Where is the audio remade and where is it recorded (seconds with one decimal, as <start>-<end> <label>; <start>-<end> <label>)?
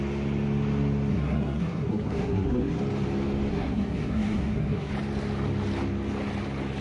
0.0-1.1 recorded; 1.1-2.8 remade; 2.8-3.5 recorded; 3.5-4.9 remade; 4.9-6.8 recorded